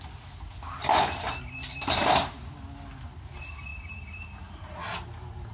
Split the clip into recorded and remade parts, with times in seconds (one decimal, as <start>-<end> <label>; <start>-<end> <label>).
0.0-5.5 recorded